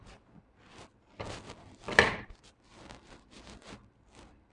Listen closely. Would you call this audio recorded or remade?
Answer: recorded